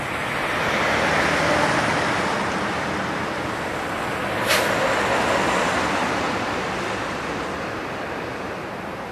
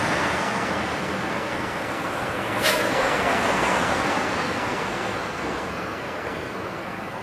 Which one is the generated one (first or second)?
second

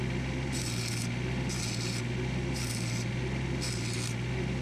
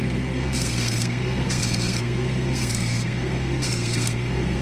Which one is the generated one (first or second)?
second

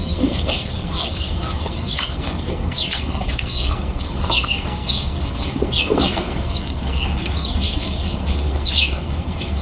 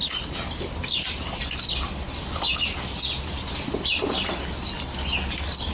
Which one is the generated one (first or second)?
first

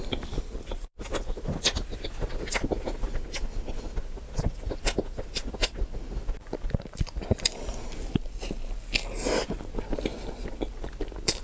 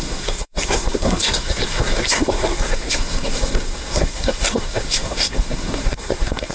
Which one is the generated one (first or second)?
second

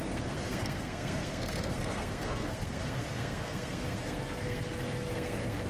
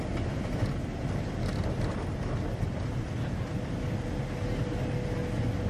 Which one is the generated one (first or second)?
first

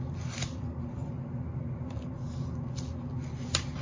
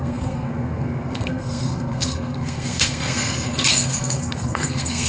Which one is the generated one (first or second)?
second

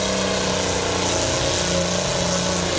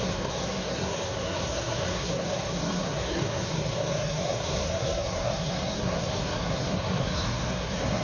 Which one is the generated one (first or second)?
second